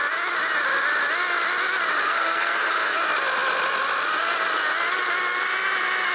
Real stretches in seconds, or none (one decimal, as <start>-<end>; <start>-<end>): 0.0-2.0; 3.0-6.1